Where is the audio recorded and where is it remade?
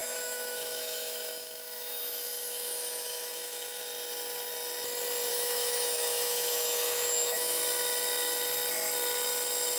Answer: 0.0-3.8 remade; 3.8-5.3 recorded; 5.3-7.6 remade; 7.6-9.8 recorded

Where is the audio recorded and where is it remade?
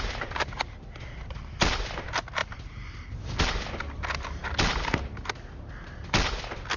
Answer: 0.0-6.8 recorded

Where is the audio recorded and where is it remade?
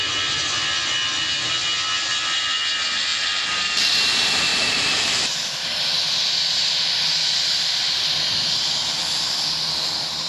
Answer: 0.0-3.1 recorded; 3.1-3.9 remade; 3.9-4.5 recorded; 4.5-5.7 remade; 5.7-10.3 recorded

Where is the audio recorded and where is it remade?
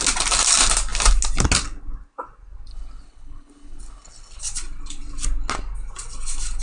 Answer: 0.0-2.7 recorded; 2.7-4.4 remade; 4.4-6.6 recorded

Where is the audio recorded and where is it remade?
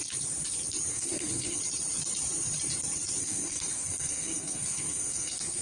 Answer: 0.0-0.9 recorded; 0.9-1.6 remade; 1.6-3.2 recorded; 3.2-5.6 remade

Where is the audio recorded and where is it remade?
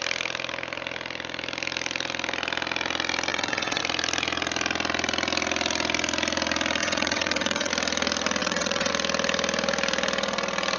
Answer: 0.0-3.3 recorded; 3.3-3.8 remade; 3.8-6.8 recorded; 6.8-7.7 remade; 7.7-8.4 recorded; 8.4-8.9 remade; 8.9-10.8 recorded